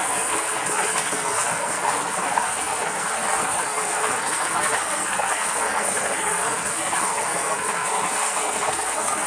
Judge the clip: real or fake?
fake